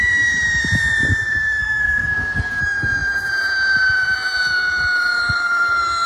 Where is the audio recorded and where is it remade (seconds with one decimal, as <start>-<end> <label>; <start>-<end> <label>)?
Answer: 0.0-1.6 recorded; 1.6-2.6 remade; 2.6-6.1 recorded